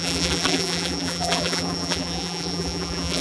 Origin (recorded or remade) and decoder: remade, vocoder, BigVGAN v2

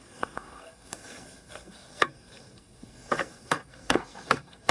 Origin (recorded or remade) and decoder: remade, codec, SNAC